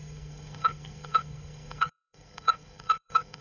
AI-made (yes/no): yes